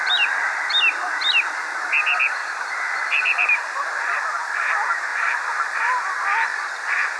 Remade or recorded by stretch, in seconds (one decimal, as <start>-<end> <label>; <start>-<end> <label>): 0.0-2.4 recorded; 2.4-4.2 remade; 4.2-5.1 recorded; 5.1-6.0 remade; 6.0-6.5 recorded; 6.5-7.2 remade